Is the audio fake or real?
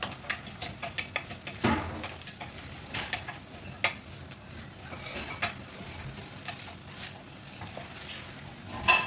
real